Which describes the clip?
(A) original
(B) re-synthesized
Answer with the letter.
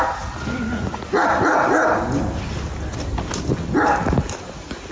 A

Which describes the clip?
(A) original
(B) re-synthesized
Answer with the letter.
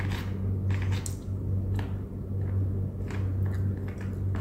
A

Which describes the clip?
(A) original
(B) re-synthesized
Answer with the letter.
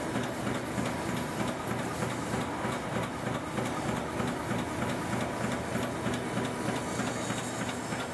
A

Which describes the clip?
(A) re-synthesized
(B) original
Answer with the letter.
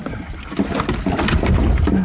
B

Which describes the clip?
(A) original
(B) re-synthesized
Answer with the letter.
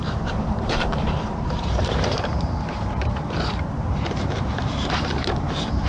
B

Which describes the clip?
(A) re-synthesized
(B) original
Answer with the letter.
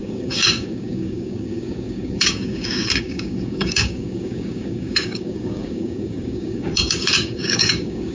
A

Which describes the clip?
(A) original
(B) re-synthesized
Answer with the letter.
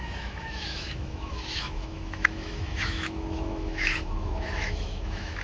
B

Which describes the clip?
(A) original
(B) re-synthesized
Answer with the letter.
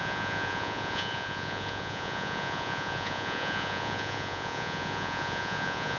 B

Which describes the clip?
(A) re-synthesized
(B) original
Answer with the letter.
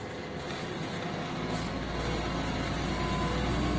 B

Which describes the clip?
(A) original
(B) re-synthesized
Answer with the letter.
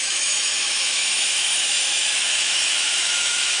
B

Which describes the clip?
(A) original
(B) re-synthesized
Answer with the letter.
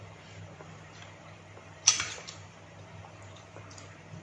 B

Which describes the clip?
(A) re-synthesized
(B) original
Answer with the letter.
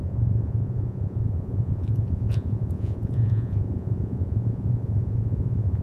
A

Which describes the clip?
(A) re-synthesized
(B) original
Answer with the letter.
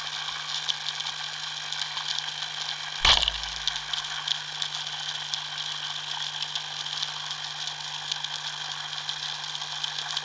B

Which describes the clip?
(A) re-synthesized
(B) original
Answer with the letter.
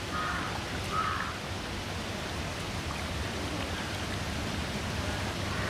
B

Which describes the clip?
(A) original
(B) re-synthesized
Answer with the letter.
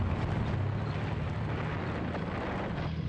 A